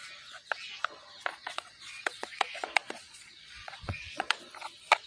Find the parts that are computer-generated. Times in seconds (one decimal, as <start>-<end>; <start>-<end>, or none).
1.3-4.4